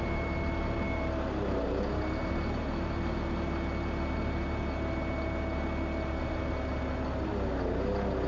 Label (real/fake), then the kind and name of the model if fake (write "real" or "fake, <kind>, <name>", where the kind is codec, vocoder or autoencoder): real